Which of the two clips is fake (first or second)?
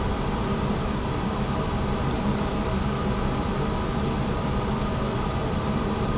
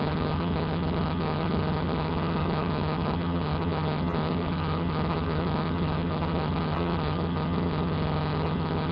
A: second